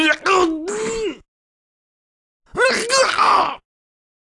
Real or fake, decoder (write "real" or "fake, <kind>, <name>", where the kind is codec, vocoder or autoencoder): real